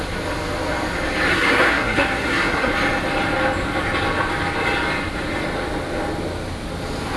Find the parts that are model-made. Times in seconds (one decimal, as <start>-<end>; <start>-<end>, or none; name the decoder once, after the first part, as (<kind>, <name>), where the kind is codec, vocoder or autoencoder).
1.3-2.7 (codec, SNAC)